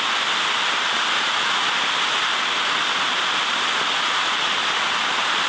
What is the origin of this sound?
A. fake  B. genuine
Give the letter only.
B